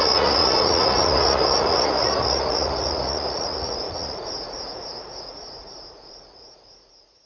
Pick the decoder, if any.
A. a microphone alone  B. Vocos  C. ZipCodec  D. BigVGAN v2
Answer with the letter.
B